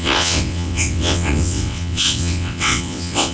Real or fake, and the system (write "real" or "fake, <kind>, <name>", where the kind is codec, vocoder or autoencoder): fake, vocoder, WaveNeXt